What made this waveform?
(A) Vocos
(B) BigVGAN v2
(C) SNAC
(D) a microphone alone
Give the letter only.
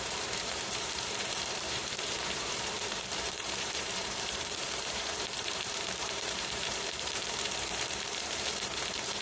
B